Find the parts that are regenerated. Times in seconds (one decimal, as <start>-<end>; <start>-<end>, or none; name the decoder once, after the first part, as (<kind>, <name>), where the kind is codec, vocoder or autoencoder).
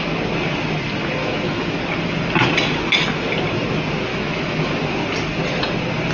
1.2-1.8 (autoencoder, DAC-VAE); 4.1-4.8